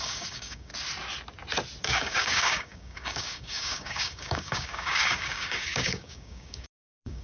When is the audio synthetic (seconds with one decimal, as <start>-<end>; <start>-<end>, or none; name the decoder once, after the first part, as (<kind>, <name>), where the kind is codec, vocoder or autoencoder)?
0.0-0.7 (codec, DAC); 1.8-7.2